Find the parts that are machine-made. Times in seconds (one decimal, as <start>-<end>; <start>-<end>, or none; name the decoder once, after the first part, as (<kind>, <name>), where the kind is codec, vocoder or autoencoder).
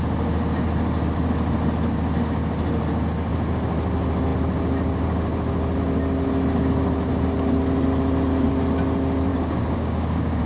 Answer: 9.3-10.4 (codec, DAC)